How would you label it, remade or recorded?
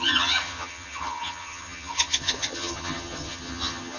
remade